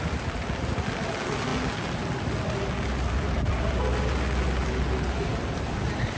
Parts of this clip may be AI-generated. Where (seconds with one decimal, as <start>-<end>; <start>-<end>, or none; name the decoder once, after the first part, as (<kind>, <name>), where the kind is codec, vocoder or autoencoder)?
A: none